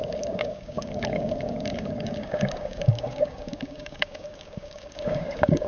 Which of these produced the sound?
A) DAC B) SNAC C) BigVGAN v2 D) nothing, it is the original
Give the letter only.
A